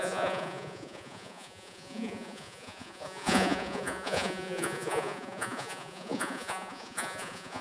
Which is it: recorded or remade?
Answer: remade